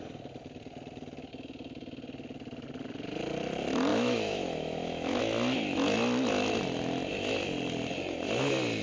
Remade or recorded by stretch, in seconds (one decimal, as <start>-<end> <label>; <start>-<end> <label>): 0.0-3.9 recorded; 3.9-5.2 remade; 5.2-8.8 recorded